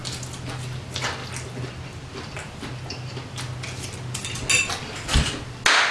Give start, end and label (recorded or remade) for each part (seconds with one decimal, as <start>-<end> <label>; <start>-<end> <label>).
0.0-5.9 recorded